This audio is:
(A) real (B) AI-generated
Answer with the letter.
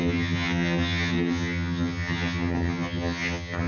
B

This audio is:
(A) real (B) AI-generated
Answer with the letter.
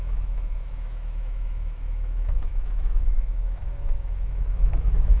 B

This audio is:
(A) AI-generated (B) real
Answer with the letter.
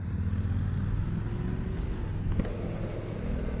B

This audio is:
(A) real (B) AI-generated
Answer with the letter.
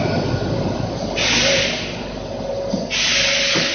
A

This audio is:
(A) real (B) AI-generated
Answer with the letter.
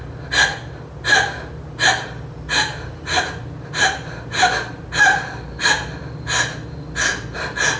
A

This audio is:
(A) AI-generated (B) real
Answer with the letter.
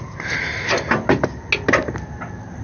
B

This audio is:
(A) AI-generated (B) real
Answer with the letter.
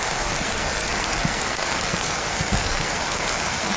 A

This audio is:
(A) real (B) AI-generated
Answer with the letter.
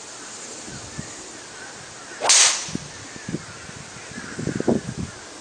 A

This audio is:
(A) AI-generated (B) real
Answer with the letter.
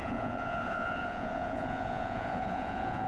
A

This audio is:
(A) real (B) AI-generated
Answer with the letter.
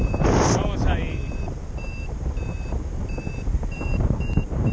B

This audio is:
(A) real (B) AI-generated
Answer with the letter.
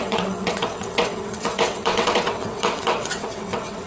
B